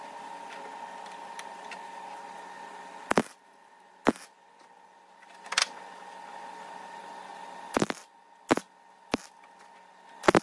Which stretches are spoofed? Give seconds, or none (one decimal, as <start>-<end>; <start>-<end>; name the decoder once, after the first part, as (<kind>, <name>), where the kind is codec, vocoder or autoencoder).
none